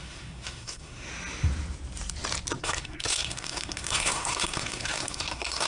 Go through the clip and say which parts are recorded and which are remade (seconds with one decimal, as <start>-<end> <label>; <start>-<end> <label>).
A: 0.0-1.1 remade; 1.1-2.6 recorded; 2.6-5.7 remade